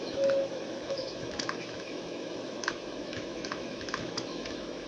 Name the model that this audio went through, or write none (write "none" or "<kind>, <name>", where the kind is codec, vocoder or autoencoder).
autoencoder, DAC-VAE